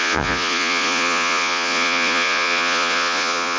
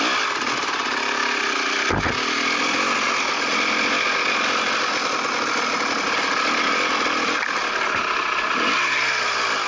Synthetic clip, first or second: first